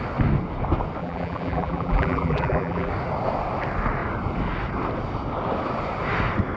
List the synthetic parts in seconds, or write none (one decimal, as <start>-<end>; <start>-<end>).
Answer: 1.0-2.9